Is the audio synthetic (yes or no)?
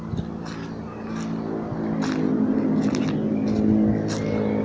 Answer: no